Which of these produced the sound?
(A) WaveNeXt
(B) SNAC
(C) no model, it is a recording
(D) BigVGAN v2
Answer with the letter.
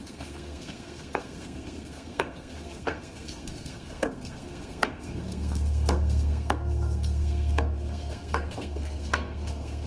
B